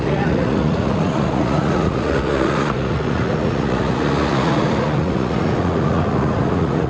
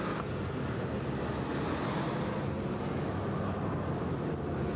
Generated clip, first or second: first